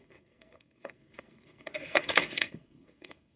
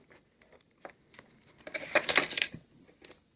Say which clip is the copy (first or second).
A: first